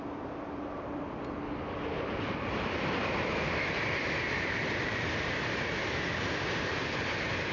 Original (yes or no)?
yes